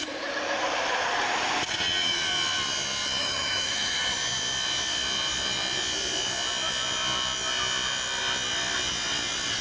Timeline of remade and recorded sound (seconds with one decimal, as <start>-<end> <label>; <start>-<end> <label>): 0.0-3.2 recorded; 3.2-4.0 remade; 4.0-9.6 recorded